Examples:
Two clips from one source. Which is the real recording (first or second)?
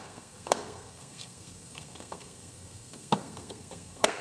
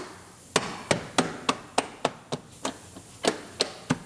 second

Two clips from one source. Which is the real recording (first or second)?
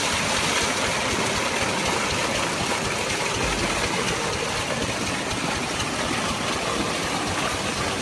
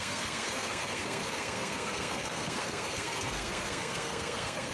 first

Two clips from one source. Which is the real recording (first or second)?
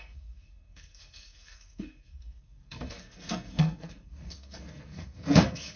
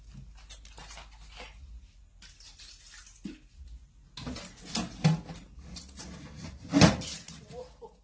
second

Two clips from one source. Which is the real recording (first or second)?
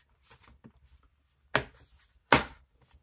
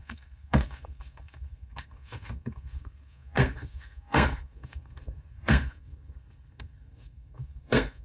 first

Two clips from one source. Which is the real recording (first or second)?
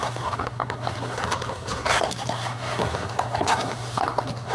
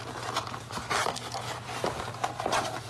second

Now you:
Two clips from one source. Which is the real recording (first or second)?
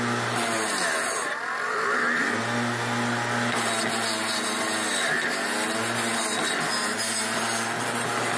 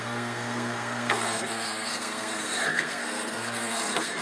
first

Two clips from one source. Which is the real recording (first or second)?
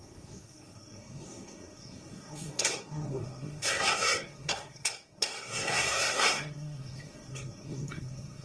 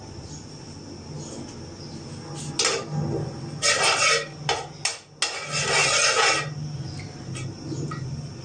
second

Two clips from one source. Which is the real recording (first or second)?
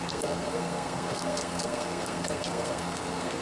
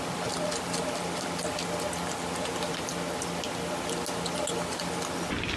second